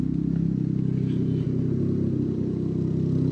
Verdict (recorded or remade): recorded